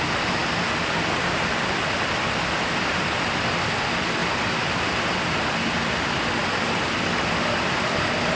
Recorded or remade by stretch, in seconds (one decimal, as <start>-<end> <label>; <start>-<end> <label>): 0.0-8.4 recorded